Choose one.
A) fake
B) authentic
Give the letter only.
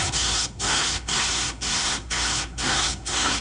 A